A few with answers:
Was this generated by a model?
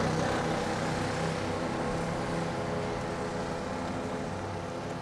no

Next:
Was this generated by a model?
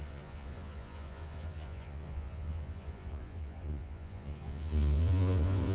yes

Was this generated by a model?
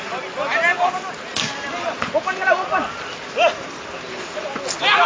no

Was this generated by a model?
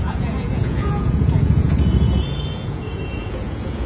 yes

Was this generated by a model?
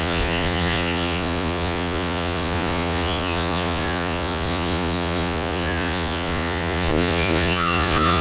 yes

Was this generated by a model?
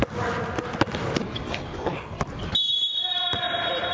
no